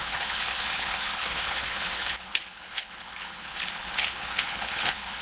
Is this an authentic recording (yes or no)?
no